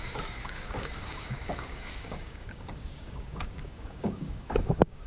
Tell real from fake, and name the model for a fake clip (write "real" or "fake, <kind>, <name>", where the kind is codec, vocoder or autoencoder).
fake, codec, DAC